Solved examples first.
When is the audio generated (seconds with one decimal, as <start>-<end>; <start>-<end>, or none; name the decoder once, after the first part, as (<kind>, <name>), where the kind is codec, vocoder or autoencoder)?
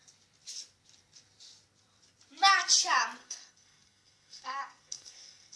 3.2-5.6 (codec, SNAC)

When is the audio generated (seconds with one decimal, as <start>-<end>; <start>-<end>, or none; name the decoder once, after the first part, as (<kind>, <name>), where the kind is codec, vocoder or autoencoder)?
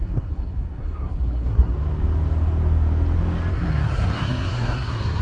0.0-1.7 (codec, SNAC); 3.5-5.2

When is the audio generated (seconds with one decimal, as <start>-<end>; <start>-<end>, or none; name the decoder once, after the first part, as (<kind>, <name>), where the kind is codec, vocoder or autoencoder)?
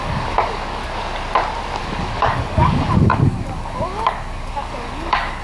0.0-0.8 (codec, DAC); 1.8-5.4